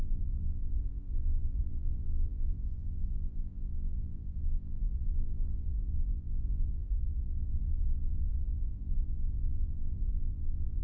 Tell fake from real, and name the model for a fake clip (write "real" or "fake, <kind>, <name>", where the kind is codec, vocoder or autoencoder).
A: fake, vocoder, Vocos